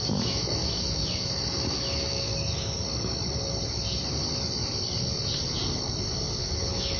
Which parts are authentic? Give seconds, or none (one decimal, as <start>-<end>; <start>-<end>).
2.3-6.4